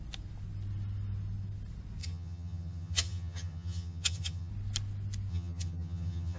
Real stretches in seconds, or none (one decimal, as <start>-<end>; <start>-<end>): 0.0-2.0; 4.5-5.3

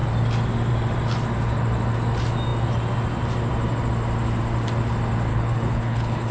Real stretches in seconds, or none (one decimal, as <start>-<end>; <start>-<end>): 0.0-5.3